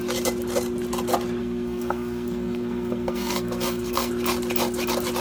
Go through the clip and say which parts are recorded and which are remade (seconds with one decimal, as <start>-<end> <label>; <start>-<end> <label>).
0.0-1.4 recorded; 1.4-4.1 remade; 4.1-5.2 recorded